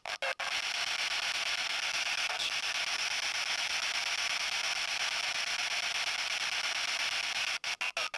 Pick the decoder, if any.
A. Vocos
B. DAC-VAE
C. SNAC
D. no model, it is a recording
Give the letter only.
D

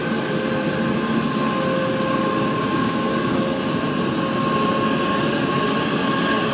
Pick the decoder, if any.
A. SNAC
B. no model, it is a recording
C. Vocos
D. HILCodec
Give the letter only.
B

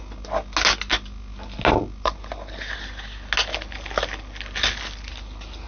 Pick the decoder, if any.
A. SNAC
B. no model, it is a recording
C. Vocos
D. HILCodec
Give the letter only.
B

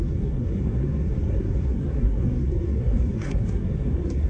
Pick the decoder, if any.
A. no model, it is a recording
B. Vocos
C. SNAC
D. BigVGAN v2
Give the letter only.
C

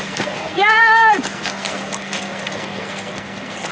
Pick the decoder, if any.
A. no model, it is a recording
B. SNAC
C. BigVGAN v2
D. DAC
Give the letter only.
B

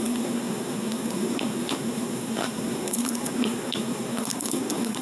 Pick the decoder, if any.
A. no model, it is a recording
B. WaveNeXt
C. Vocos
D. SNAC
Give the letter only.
D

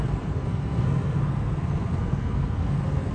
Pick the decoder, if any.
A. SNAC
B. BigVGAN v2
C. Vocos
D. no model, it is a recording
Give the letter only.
A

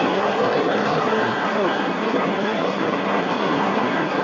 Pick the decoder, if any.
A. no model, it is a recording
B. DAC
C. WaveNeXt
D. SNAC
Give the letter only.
D